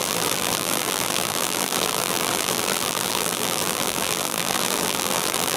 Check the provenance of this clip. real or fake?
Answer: fake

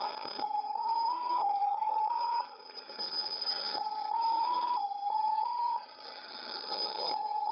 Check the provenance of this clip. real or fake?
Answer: fake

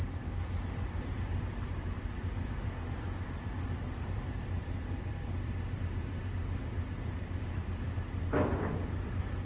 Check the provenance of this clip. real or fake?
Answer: fake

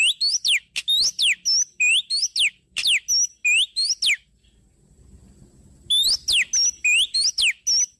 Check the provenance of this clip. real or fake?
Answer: real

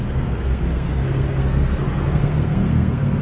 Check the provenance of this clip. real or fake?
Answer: fake